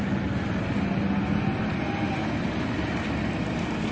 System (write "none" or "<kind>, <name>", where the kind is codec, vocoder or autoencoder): none